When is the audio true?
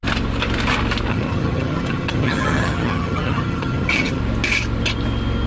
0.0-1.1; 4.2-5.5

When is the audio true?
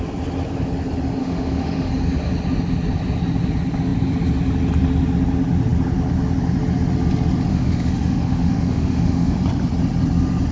0.0-1.2; 1.9-7.5; 9.4-10.5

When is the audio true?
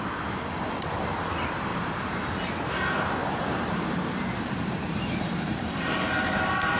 0.0-1.7; 2.7-3.2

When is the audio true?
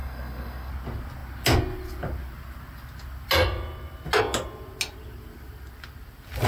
0.7-6.5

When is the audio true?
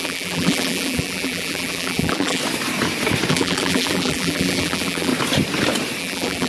2.4-3.3; 5.1-6.0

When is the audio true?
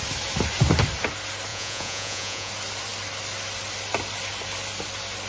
0.0-1.5; 2.5-5.3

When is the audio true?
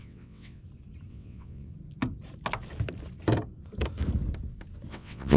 0.6-1.1; 1.7-4.9